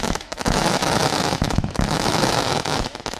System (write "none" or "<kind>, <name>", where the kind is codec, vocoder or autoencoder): autoencoder, DAC-VAE